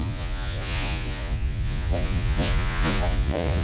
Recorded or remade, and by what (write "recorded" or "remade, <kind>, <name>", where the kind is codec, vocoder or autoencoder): remade, vocoder, Vocos